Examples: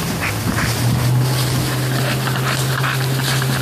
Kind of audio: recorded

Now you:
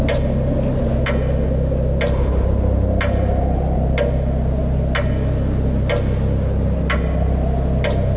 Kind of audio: recorded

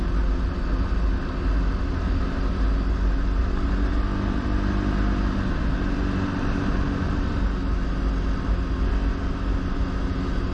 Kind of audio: recorded